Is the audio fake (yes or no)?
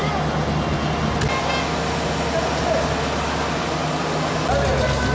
no